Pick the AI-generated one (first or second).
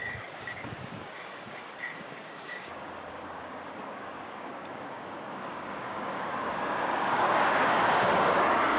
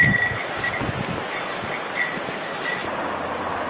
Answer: first